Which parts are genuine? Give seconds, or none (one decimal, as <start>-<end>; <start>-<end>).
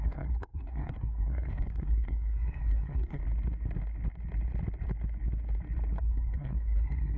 3.2-6.0